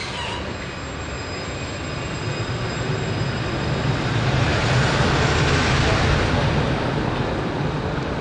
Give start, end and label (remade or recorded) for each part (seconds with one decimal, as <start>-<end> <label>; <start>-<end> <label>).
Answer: 0.0-8.2 recorded